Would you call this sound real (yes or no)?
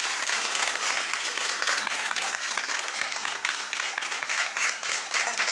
no